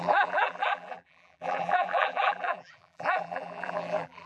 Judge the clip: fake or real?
fake